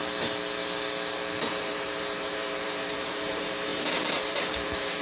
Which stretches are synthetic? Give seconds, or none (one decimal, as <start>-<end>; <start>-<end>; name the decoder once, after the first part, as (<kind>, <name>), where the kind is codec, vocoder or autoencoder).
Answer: 1.5-5.0 (vocoder, BigVGAN v2)